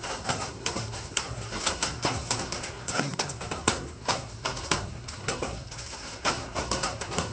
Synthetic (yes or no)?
yes